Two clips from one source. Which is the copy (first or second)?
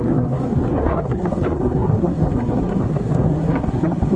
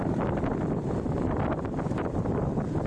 first